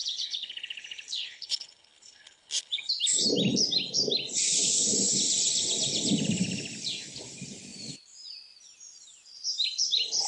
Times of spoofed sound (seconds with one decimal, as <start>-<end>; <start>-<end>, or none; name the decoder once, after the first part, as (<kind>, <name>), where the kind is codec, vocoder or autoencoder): 0.0-2.9 (codec, HILCodec)